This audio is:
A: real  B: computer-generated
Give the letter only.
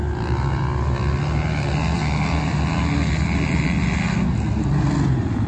A